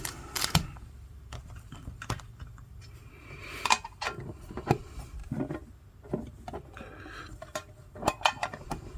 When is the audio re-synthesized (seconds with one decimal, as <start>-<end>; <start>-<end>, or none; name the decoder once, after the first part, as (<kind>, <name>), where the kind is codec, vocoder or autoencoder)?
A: 0.0-5.2 (vocoder, BigVGAN v2); 7.2-9.0